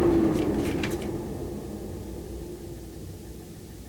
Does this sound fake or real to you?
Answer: real